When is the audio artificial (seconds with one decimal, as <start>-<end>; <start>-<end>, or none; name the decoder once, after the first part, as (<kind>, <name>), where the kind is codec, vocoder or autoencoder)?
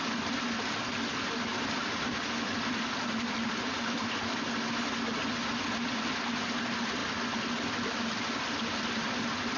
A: 1.5-3.6 (vocoder, BigVGAN v2)